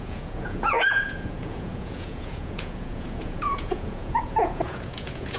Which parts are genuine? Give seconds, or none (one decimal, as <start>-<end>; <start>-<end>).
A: none